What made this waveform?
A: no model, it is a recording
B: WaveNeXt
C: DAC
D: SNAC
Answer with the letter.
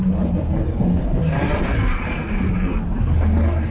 A